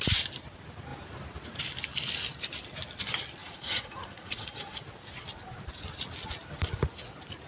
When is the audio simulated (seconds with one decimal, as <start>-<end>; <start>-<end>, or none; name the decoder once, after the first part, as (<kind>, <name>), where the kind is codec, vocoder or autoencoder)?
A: 3.4-4.8 (vocoder, Vocos)

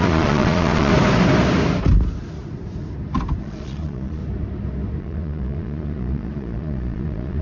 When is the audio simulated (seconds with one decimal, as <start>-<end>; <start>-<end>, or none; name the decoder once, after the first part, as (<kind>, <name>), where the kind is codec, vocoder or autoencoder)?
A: 0.0-0.9 (vocoder, Vocos); 3.4-4.2; 5.0-7.4

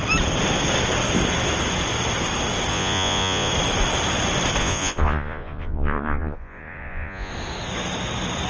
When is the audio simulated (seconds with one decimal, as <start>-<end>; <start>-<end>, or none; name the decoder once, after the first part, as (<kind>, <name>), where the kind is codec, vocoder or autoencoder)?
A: 2.7-3.5 (vocoder, Vocos); 4.6-7.3

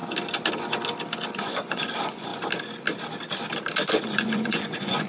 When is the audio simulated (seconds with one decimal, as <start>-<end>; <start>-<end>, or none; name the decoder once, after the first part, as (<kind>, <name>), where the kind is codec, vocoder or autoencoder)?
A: 1.4-2.3 (vocoder, Vocos); 4.0-5.1

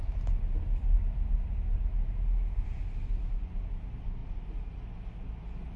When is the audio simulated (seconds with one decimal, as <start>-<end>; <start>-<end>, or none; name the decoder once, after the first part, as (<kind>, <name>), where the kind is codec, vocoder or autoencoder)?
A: none

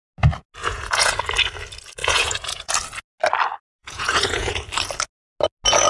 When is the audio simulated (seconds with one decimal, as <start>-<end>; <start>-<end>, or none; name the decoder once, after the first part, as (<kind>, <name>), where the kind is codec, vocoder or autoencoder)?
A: 0.6-1.1 (vocoder, Vocos); 2.0-2.7; 3.8-4.6

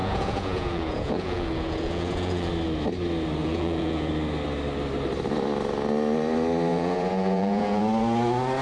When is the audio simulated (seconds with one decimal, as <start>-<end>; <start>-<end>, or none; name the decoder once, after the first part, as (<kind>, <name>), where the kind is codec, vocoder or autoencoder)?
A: 0.0-2.5 (vocoder, Vocos); 3.4-4.1; 6.7-7.8